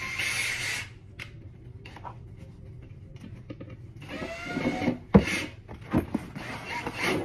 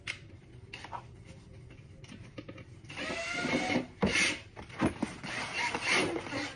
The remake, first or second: second